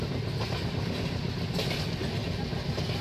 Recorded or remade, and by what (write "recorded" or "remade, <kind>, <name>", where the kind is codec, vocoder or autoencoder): recorded